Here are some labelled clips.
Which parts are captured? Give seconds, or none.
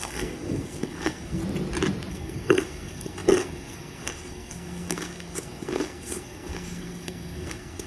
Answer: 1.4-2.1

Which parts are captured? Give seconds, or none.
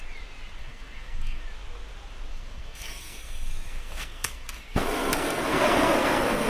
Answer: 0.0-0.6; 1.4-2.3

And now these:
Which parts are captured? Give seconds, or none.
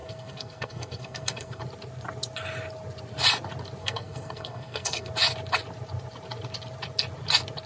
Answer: 1.6-3.8; 5.1-7.7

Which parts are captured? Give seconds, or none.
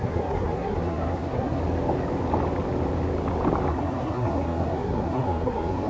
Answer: 1.6-3.7